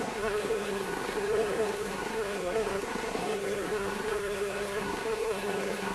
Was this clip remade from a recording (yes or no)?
yes